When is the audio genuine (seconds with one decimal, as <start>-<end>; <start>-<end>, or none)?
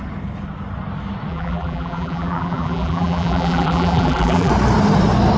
0.0-1.3; 4.5-5.4